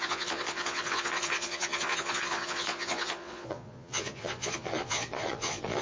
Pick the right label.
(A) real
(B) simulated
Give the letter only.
B